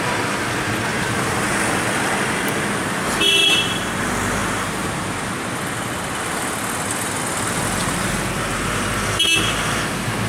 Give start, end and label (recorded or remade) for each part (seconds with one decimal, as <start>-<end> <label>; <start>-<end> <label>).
0.0-0.9 recorded; 0.9-1.8 remade; 1.8-3.4 recorded; 3.4-4.0 remade; 4.0-4.4 recorded; 4.4-5.3 remade; 5.3-7.8 recorded; 7.8-8.9 remade; 8.9-10.3 recorded